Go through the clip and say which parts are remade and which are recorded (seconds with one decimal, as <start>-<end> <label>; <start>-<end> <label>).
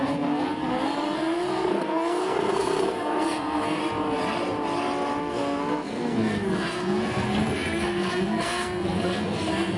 0.0-3.8 remade; 3.8-5.2 recorded; 5.2-9.8 remade